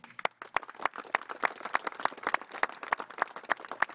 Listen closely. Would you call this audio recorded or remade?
recorded